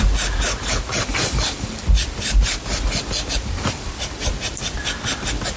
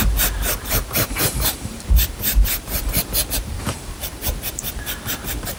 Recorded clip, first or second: first